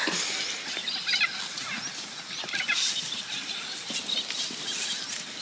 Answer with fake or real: real